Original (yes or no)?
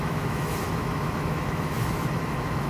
no